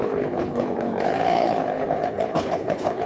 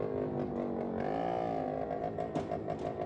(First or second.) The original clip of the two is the second